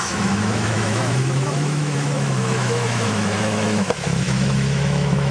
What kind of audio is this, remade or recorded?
remade